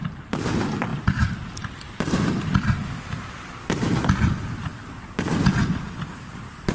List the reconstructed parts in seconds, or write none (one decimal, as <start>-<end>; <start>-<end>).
none